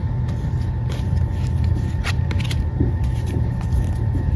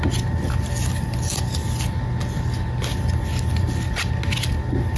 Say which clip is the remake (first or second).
first